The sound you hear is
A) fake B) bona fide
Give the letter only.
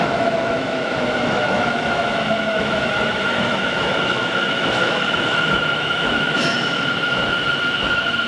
A